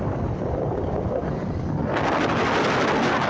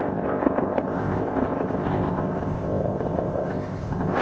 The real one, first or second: first